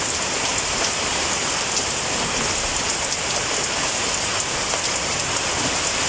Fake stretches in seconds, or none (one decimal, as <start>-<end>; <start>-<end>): none